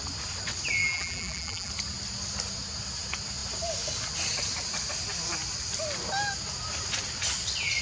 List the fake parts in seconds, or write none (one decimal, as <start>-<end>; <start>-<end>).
0.8-1.7

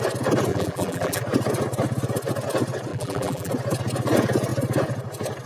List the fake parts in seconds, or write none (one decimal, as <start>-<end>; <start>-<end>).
0.5-1.2; 2.9-3.5

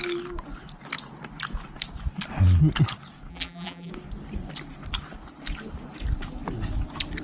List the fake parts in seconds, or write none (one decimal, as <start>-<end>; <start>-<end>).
3.3-3.9

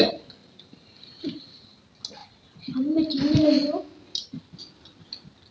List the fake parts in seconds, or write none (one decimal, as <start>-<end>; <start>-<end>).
0.4-1.8